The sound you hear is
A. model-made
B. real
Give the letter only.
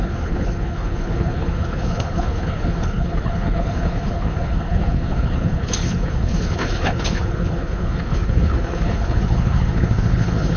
A